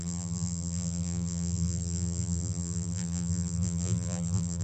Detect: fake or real fake